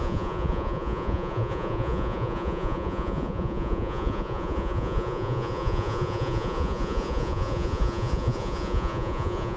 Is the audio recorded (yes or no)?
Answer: no